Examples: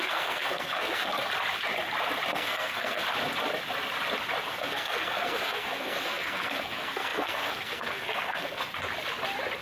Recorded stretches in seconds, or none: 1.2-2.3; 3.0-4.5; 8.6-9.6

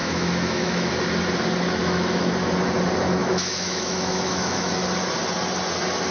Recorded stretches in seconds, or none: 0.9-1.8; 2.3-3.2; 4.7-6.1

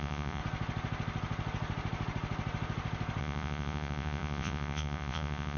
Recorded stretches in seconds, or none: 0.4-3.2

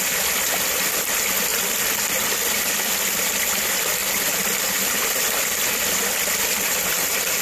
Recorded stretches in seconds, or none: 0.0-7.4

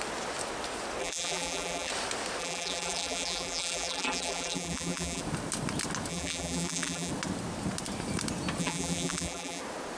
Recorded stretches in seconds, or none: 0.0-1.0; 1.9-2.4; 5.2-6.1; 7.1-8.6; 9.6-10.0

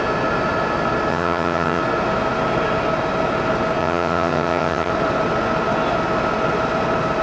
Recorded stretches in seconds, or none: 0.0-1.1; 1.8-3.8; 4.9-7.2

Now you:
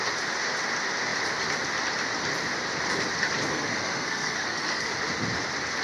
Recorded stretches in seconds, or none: 0.0-3.5; 4.9-5.8